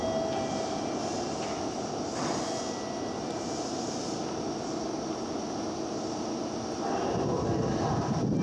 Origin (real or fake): real